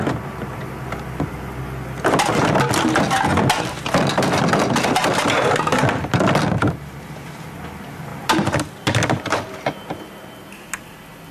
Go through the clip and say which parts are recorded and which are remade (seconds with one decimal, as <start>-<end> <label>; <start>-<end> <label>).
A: 0.0-11.3 recorded